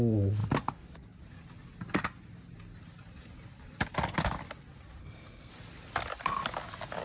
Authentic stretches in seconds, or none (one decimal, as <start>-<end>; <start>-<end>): 0.0-5.0; 5.5-7.0